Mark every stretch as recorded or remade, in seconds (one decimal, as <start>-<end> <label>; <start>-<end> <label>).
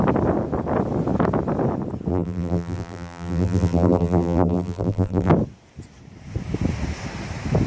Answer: 0.0-2.1 recorded; 2.1-5.3 remade; 5.3-7.7 recorded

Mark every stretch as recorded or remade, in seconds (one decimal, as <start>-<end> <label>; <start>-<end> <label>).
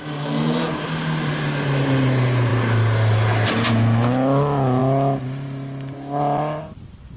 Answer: 0.0-7.2 recorded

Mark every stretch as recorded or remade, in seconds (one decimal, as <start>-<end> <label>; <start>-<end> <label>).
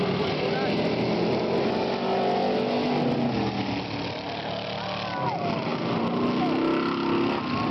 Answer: 0.0-7.7 recorded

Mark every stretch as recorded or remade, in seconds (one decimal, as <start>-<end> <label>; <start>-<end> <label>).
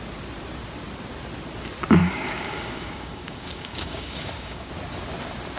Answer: 0.0-2.0 recorded; 2.0-4.7 remade; 4.7-5.6 recorded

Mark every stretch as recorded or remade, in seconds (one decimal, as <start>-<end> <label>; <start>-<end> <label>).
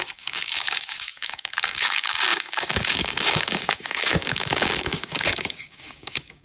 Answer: 0.0-6.4 remade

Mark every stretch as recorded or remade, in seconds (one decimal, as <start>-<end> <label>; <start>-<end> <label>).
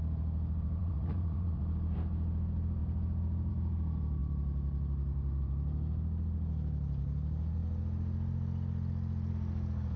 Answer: 0.0-0.8 recorded; 0.8-1.6 remade; 1.6-10.0 recorded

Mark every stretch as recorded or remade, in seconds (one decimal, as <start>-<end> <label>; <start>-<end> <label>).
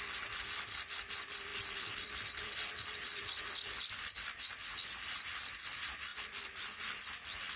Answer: 0.0-7.6 recorded